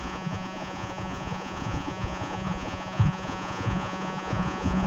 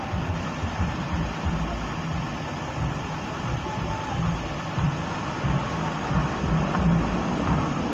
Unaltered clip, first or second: second